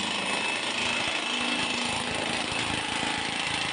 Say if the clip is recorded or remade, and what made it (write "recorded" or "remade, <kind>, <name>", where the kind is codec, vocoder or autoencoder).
recorded